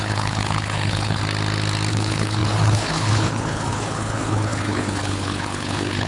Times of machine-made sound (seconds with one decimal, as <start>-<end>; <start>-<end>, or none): 0.0-1.2; 1.9-6.1